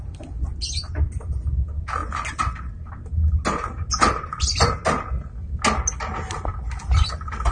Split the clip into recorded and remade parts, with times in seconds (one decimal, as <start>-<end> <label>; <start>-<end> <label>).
0.0-7.5 recorded